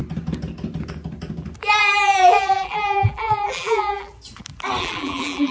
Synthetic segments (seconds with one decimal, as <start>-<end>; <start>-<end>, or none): 1.8-4.1; 4.8-5.5